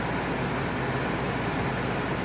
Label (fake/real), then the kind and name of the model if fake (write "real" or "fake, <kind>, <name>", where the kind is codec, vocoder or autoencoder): real